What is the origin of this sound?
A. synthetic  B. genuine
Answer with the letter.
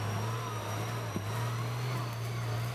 B